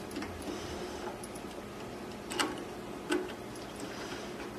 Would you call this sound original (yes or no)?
yes